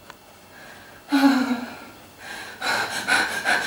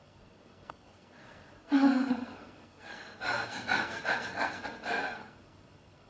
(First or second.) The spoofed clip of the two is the second